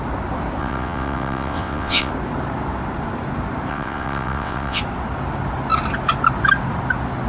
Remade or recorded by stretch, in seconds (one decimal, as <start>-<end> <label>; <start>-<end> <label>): 0.0-0.6 recorded; 0.6-2.1 remade; 2.1-3.7 recorded; 3.7-4.8 remade; 4.8-7.3 recorded